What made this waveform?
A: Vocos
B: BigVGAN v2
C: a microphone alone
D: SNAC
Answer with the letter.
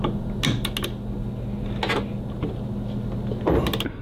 C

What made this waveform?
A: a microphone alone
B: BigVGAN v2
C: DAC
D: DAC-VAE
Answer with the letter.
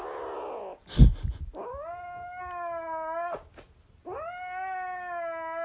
A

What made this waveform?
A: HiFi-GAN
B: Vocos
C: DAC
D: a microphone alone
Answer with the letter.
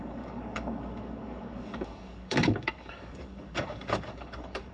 C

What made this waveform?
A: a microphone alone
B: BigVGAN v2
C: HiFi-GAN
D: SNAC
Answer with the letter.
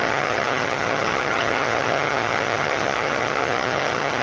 C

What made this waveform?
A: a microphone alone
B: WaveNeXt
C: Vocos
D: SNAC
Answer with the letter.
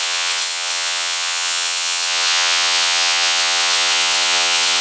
B